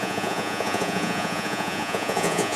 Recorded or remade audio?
remade